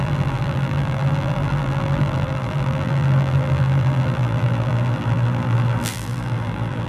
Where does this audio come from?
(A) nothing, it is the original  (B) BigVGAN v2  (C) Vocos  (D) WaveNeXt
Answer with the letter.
B